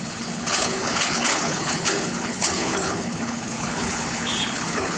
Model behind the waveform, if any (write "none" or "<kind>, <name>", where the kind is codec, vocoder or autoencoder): codec, HILCodec